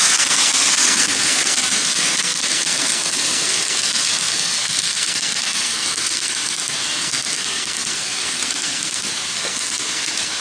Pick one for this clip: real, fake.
fake